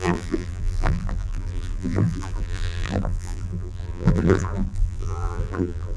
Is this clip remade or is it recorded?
remade